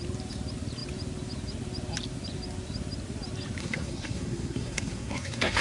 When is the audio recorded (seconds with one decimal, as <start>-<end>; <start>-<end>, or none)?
0.0-3.6